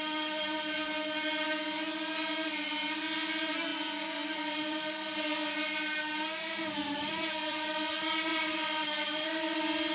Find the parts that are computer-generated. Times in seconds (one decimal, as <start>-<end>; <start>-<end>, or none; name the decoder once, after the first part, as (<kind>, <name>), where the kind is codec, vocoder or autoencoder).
0.0-0.8 (vocoder, BigVGAN v2); 2.3-5.4; 6.5-9.9